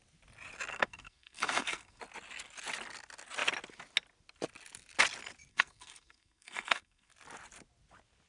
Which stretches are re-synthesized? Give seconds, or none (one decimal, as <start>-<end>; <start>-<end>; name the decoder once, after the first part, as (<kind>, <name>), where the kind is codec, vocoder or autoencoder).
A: 0.7-2.0 (codec, SNAC); 5.5-7.1